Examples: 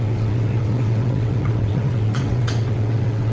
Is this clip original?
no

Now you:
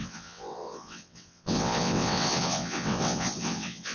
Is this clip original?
no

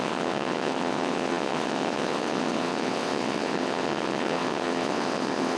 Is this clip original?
no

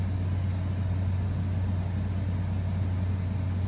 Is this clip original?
yes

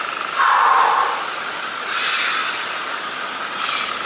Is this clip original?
yes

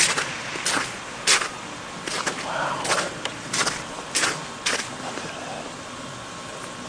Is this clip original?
yes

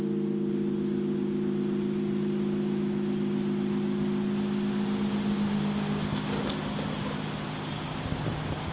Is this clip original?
yes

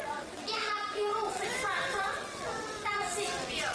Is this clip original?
no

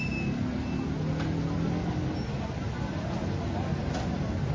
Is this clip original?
yes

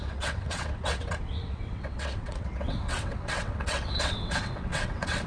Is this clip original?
no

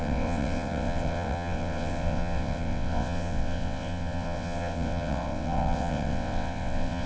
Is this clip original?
no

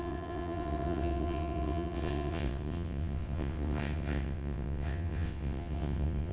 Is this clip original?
no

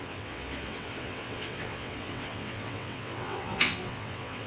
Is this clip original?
no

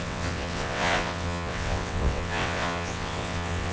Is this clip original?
no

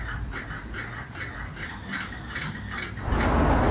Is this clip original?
yes